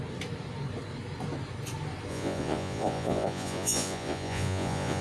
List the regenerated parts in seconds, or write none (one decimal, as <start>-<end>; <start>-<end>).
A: 2.1-5.0